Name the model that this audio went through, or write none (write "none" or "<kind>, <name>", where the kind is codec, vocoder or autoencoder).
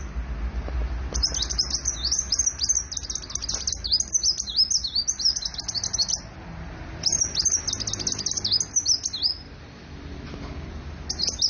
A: none